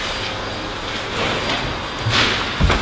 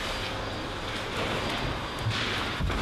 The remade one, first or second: second